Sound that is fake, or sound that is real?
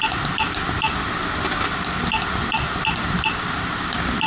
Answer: real